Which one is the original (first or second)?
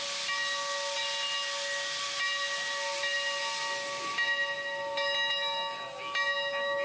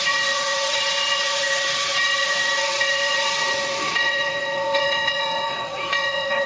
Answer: first